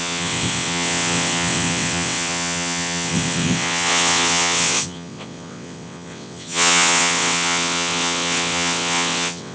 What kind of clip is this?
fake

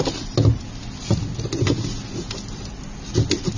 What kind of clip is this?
real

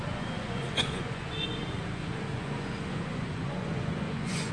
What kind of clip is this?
fake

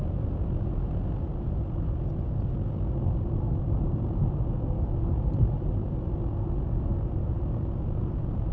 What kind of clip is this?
real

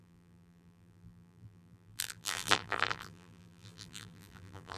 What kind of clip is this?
fake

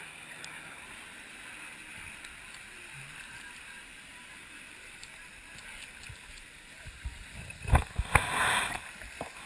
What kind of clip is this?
real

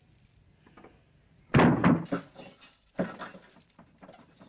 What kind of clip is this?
real